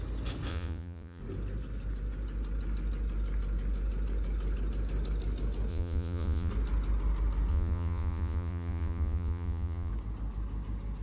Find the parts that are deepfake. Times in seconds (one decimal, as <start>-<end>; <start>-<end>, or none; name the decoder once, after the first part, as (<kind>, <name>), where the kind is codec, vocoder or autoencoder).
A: 0.5-1.2 (vocoder, Vocos); 5.7-6.5; 7.5-9.9

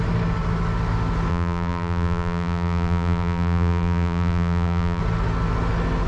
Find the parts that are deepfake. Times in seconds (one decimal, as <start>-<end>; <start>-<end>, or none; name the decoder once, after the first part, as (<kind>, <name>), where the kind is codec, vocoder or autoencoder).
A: 1.3-5.0 (vocoder, BigVGAN v2)

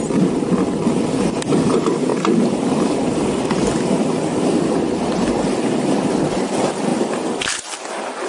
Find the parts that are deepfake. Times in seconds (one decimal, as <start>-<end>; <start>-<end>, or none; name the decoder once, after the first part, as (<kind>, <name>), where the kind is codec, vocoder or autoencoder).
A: 6.9-7.4 (vocoder, BigVGAN v2)

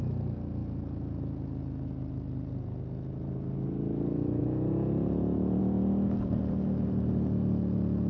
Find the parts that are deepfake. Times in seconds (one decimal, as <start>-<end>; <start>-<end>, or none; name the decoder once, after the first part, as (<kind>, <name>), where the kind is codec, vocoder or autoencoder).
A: 4.4-5.6 (vocoder, Vocos)

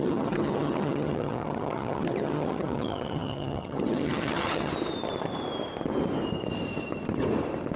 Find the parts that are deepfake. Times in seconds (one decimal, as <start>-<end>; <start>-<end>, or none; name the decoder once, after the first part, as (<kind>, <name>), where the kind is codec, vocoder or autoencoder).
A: 0.0-4.7 (vocoder, HiFi-GAN)